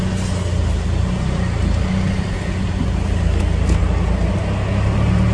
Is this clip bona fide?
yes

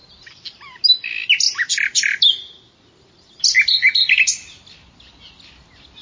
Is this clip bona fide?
yes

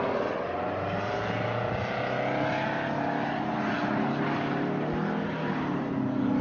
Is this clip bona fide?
yes